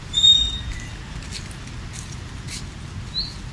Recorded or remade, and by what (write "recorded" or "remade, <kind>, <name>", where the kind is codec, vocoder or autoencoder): recorded